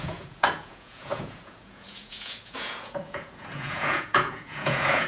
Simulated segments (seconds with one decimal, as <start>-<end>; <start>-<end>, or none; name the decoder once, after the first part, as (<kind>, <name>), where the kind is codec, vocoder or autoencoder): 0.0-5.1 (vocoder, Vocos)